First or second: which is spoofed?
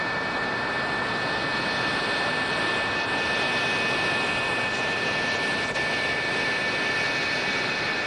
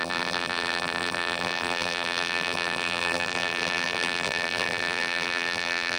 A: second